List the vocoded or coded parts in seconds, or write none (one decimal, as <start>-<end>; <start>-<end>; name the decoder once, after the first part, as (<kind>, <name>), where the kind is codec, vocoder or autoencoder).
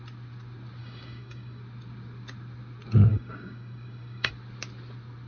0.8-1.6 (codec, DAC); 3.1-4.3